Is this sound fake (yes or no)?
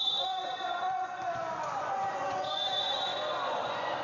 yes